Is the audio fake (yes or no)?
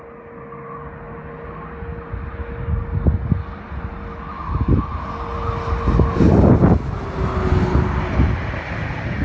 no